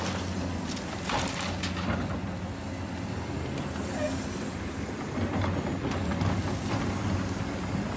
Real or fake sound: real